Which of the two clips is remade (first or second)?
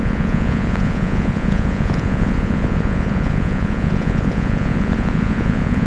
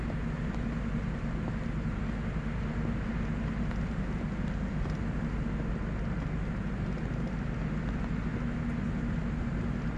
first